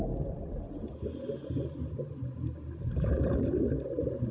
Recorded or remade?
recorded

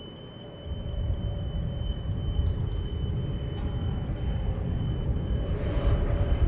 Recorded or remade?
recorded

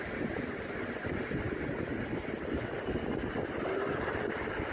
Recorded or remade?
recorded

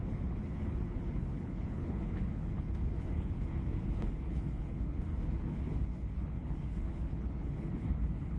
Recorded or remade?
remade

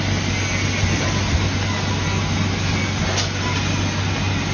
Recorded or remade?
recorded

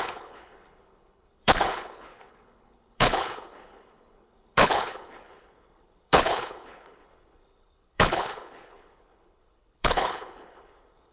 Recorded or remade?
remade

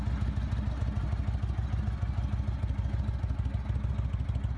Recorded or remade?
recorded